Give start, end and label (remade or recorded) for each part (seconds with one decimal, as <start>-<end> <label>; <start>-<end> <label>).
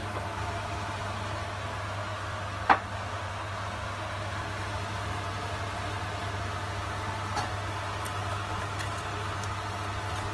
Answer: 0.0-10.3 recorded